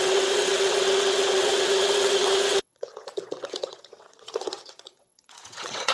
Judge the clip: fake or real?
fake